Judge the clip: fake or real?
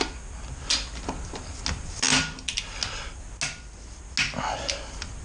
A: real